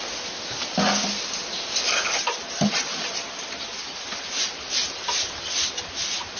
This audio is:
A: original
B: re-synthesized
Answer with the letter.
A